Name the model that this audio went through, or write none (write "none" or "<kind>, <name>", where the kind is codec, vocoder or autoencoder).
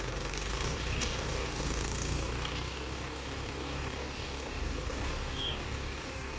codec, DAC